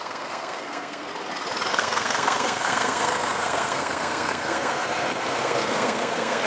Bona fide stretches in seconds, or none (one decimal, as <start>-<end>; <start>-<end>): 1.1-1.7